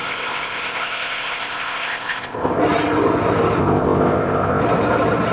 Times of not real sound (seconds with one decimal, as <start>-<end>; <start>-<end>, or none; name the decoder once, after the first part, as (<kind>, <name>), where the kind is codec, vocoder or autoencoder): 0.0-2.6 (codec, ZipCodec); 3.6-4.6